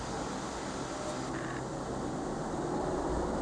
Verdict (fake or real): real